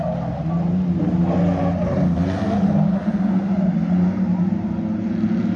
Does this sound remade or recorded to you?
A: recorded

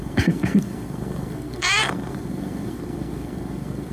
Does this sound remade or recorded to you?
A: remade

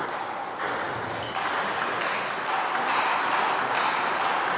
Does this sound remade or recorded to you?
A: recorded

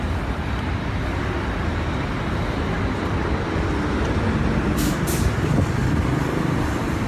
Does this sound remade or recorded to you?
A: recorded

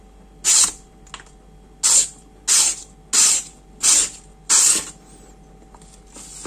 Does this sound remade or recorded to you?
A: recorded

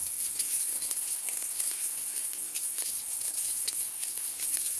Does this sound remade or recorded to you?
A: remade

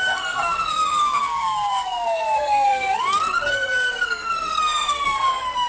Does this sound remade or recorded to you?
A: remade